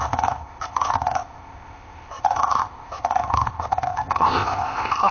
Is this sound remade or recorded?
remade